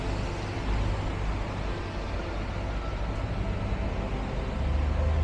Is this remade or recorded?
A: recorded